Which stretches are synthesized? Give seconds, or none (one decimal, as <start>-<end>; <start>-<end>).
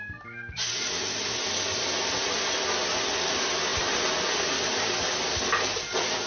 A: none